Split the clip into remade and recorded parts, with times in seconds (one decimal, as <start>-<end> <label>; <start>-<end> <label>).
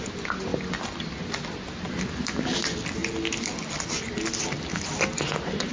0.0-5.7 recorded